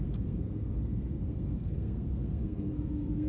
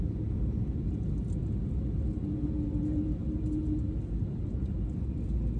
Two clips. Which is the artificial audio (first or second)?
first